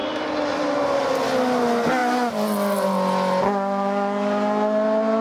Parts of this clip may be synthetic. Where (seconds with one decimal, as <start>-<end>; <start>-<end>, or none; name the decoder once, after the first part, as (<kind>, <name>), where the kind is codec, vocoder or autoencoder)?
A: none